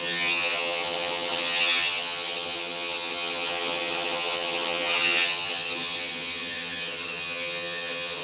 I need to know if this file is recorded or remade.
remade